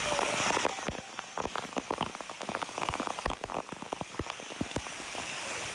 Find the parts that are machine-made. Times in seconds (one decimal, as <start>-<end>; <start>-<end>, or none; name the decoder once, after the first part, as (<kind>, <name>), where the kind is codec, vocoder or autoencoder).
0.0-3.5 (codec, DAC); 4.0-5.7